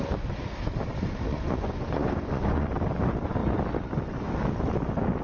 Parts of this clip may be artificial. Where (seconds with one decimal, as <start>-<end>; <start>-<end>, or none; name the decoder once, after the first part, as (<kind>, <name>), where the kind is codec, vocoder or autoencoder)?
1.3-2.7 (vocoder, Vocos)